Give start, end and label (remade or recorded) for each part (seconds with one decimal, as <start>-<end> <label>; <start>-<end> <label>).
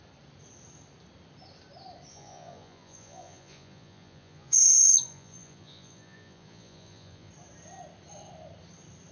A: 0.0-2.1 recorded; 2.1-7.3 remade; 7.3-9.1 recorded